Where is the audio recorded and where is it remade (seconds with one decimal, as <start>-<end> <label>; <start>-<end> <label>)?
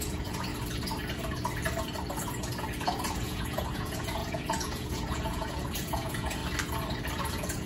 0.0-0.5 remade; 0.5-2.8 recorded; 2.8-6.4 remade; 6.4-7.3 recorded; 7.3-7.7 remade